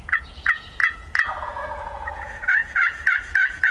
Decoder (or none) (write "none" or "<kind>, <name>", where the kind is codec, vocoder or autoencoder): vocoder, Vocos